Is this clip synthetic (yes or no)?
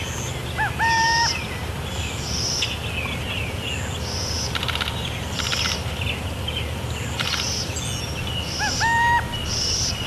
no